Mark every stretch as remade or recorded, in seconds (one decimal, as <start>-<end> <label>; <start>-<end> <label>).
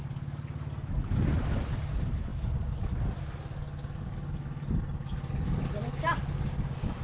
0.0-7.0 recorded